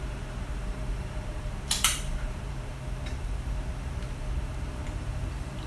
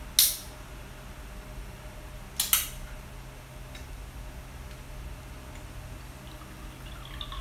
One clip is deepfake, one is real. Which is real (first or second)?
second